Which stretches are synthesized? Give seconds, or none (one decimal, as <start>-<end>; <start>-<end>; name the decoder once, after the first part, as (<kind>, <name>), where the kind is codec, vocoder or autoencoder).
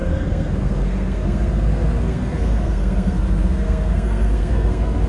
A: 0.0-5.1 (codec, SNAC)